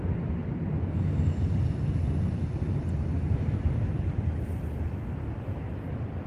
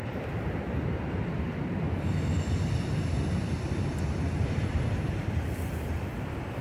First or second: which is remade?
second